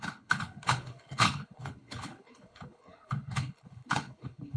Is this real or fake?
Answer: fake